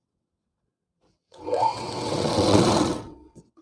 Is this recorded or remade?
remade